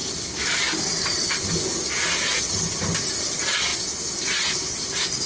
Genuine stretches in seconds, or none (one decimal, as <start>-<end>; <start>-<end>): 0.0-5.3